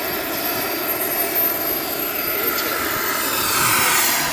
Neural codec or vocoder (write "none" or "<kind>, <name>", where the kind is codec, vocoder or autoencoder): none